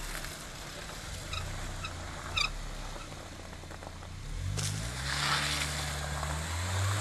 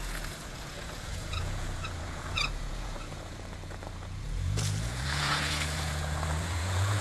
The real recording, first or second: first